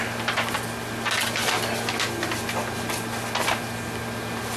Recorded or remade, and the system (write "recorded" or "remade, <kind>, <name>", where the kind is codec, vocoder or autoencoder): recorded